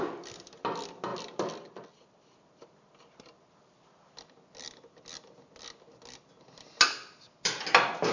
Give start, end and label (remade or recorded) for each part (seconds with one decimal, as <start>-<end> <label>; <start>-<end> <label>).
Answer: 0.0-8.1 recorded